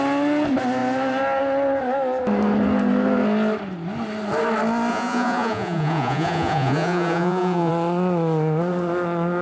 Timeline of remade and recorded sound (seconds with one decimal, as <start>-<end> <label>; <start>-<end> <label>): 0.0-4.9 recorded; 4.9-7.7 remade; 7.7-9.4 recorded